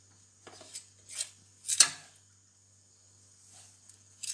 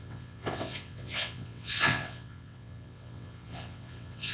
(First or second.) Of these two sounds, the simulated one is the second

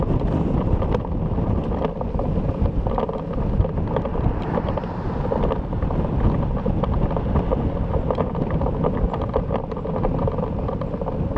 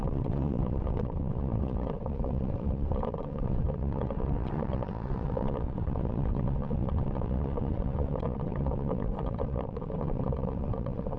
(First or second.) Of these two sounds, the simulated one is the second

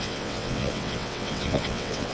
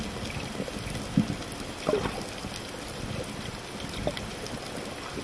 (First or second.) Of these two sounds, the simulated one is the first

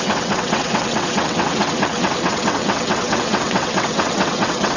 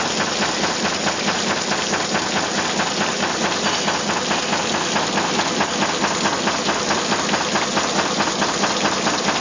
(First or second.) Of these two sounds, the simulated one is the first